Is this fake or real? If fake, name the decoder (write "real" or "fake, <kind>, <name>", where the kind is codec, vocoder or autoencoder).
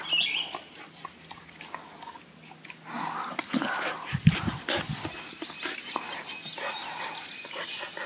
real